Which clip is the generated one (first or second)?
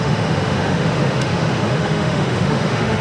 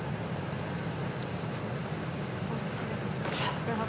first